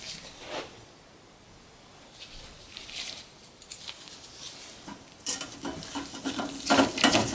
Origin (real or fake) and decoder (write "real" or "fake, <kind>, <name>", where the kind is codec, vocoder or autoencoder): real